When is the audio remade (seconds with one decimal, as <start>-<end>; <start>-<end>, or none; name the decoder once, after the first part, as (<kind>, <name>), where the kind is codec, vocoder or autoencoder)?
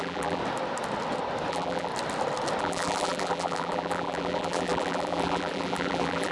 0.0-0.4 (vocoder, BigVGAN v2); 1.5-1.9; 2.6-6.3